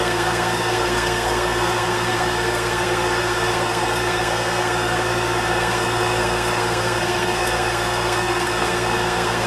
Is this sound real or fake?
fake